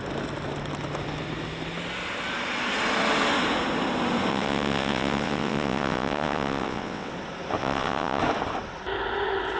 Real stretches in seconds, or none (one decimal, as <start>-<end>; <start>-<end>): 0.0-4.3; 7.1-7.6; 8.2-9.6